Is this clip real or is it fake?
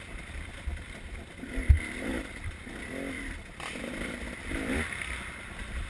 real